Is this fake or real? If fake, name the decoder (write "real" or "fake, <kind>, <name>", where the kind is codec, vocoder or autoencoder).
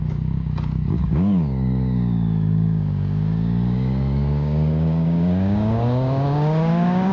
fake, codec, DAC